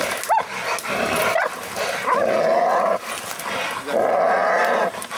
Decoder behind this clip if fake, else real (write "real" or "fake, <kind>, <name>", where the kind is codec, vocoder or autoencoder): real